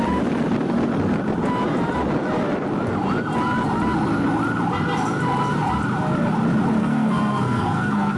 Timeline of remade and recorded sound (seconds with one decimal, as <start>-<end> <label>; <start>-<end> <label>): 0.0-6.8 recorded; 6.8-8.2 remade